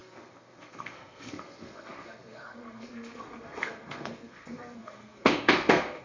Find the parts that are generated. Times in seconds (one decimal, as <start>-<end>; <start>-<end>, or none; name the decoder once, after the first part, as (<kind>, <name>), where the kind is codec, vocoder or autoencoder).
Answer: 0.0-6.0 (codec, SNAC)